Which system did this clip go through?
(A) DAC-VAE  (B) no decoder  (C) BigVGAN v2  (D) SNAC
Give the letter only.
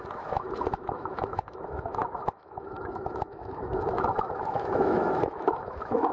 A